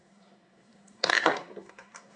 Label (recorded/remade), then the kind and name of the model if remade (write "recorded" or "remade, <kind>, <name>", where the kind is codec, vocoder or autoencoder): remade, codec, SNAC